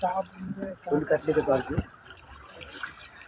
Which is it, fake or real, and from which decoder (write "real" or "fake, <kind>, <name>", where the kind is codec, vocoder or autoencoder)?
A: fake, vocoder, BigVGAN v2